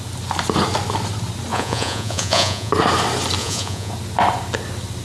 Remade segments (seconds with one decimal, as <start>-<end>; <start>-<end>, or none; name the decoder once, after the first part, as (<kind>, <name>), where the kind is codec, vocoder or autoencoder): 1.5-2.7 (vocoder, Vocos); 3.4-3.9